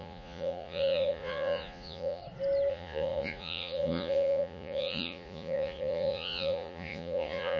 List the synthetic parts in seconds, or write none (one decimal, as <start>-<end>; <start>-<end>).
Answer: 0.0-2.2; 2.7-7.6